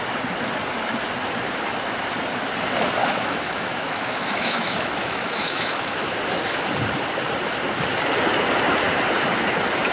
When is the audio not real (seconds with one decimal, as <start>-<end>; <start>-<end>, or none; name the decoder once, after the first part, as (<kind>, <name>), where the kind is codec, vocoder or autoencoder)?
3.0-6.2 (autoencoder, DAC-VAE)